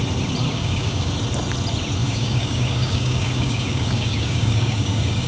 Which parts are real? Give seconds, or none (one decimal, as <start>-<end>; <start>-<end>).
0.0-0.4; 1.1-2.0